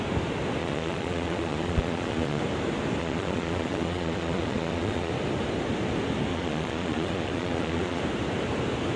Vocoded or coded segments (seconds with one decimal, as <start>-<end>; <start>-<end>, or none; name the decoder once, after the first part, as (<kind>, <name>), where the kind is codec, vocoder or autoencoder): 0.6-2.4 (vocoder, Vocos); 3.0-5.1; 6.3-8.0